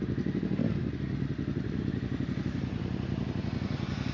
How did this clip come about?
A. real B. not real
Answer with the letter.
A